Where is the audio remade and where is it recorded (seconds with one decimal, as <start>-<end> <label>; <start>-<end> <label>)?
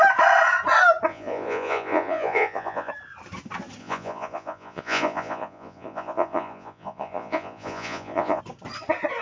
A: 0.0-1.1 recorded; 1.1-2.9 remade; 2.9-3.8 recorded; 3.8-8.4 remade; 8.4-9.2 recorded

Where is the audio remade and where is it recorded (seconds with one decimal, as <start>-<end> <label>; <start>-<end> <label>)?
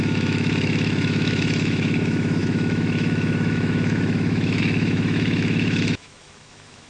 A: 0.0-6.9 remade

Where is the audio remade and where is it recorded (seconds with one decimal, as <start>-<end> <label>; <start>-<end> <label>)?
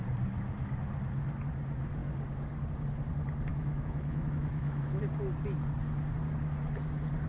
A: 0.0-3.5 recorded; 3.5-5.0 remade; 5.0-7.3 recorded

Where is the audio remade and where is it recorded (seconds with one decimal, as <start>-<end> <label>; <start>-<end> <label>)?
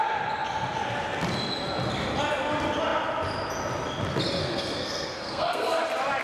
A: 0.0-4.4 recorded; 4.4-5.8 remade; 5.8-6.2 recorded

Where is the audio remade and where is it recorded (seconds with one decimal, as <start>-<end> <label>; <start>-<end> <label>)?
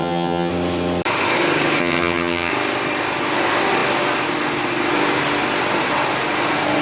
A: 0.0-0.5 remade; 0.5-1.8 recorded; 1.8-2.5 remade; 2.5-6.8 recorded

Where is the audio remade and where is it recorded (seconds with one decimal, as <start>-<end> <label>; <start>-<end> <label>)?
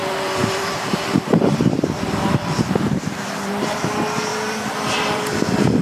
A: 0.0-3.5 remade; 3.5-4.3 recorded; 4.3-5.2 remade; 5.2-5.8 recorded